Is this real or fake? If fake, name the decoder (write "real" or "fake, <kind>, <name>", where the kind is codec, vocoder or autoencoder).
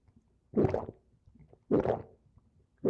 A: real